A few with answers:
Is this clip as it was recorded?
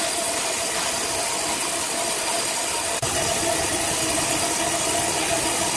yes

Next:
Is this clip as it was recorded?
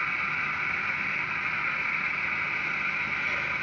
yes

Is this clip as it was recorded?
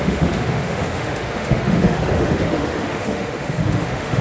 no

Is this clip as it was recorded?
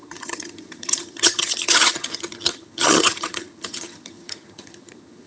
no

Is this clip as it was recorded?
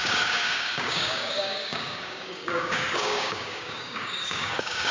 no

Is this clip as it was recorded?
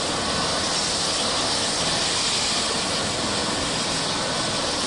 yes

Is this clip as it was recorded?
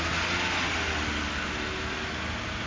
yes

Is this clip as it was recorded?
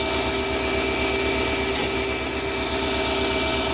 yes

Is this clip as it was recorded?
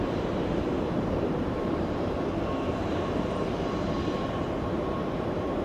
no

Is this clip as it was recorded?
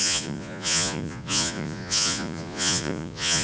no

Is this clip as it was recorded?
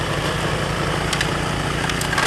yes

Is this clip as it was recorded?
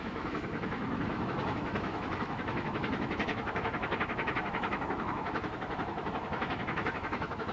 no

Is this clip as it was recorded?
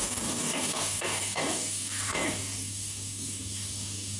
no